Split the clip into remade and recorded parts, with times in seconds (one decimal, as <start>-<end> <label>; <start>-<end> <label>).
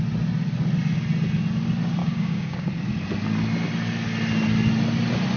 0.0-2.0 recorded; 2.0-2.7 remade; 2.7-5.4 recorded